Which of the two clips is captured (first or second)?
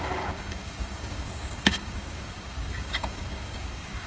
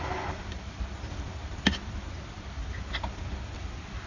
second